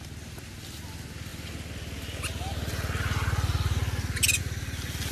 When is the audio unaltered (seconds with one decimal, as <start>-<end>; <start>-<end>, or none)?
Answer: 0.0-5.1